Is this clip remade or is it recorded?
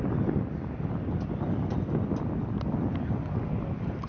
recorded